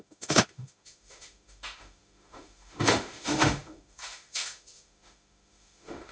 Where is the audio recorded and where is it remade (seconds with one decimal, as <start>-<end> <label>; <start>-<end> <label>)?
0.0-6.1 remade